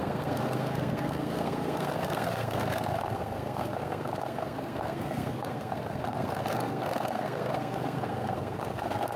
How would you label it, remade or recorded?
remade